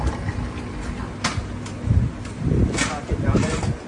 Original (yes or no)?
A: yes